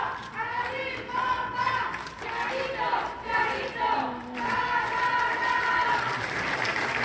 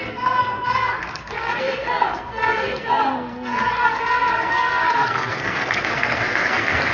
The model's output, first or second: second